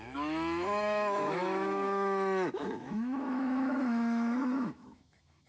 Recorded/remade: remade